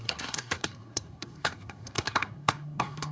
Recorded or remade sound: remade